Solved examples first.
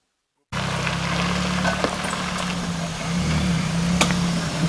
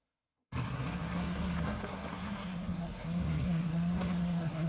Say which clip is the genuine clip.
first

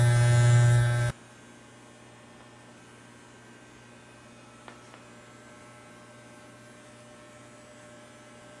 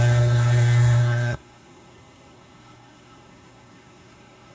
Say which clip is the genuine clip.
first